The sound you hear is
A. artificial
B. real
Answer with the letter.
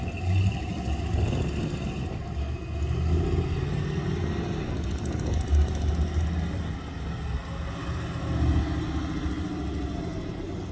B